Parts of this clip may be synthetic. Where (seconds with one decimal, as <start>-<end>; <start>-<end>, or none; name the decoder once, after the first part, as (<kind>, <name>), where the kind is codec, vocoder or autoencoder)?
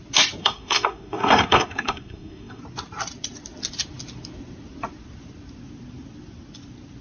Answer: 0.4-2.6 (codec, SNAC)